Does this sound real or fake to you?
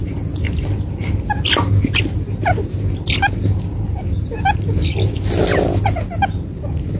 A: real